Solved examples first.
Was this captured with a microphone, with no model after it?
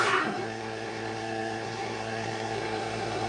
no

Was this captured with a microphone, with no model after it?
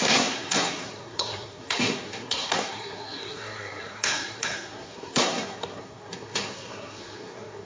no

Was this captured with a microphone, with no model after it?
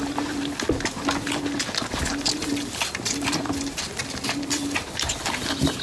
yes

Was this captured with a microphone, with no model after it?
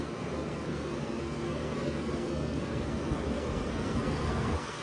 no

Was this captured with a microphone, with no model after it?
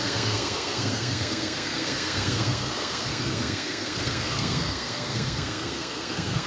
no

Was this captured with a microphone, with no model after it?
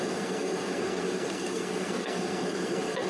no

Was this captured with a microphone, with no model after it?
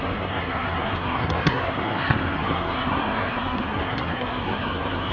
no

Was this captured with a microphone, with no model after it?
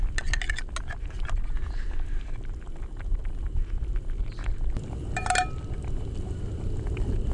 yes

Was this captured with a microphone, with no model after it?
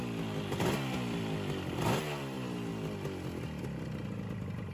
yes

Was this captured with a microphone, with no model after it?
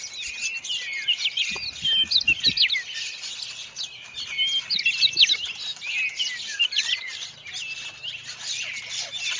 yes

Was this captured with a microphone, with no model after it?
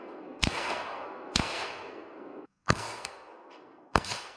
no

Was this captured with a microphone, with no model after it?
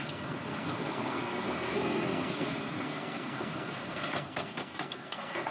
no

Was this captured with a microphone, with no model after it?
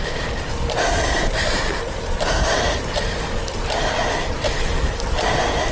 yes